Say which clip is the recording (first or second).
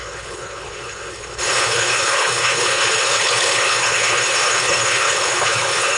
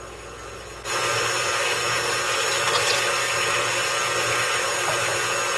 second